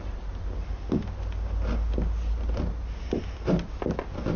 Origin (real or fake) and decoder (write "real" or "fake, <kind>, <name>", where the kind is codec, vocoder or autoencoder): real